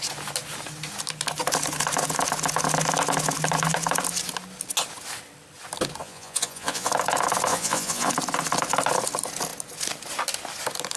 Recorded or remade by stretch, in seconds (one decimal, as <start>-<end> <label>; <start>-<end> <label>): 0.0-6.0 recorded; 6.0-6.9 remade; 6.9-7.5 recorded; 7.5-8.1 remade; 8.1-11.0 recorded